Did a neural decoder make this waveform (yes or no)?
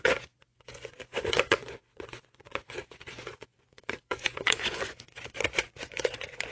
yes